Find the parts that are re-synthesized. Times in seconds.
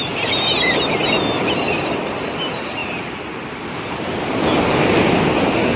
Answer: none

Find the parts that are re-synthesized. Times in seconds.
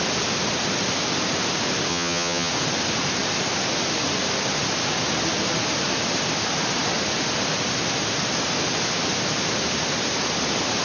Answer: 1.9-2.5 (vocoder, HiFi-GAN)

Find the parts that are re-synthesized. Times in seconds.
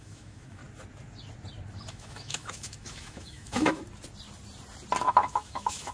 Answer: 0.0-0.6 (autoencoder, DAC-VAE); 1.9-3.8; 5.0-5.9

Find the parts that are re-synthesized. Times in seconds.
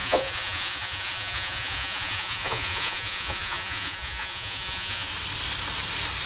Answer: 0.0-5.1 (vocoder, Vocos)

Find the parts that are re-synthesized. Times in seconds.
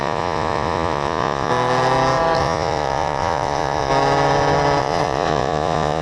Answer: 0.0-1.5 (vocoder, Vocos); 2.4-3.9; 4.8-6.0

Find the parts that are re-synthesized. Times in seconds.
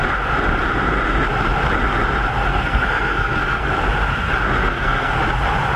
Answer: 2.5-3.7 (codec, SNAC); 4.6-5.2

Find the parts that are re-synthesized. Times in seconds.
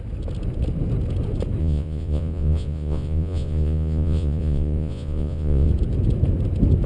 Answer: 1.6-5.7 (vocoder, Vocos)